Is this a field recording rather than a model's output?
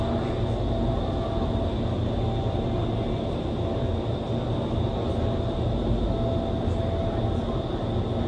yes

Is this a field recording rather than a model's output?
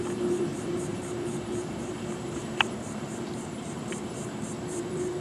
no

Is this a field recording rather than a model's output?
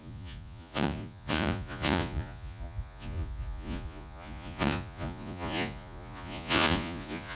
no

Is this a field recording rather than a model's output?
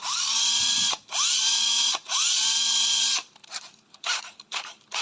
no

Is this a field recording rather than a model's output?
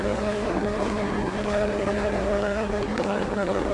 no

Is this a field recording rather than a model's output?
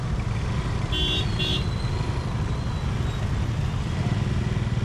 yes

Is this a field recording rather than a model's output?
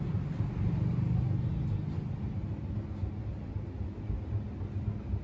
yes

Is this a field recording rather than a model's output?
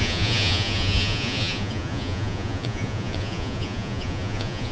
no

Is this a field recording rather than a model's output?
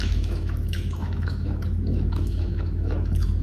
no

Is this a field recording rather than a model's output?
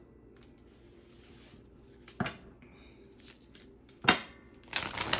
yes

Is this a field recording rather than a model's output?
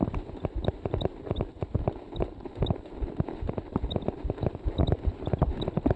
yes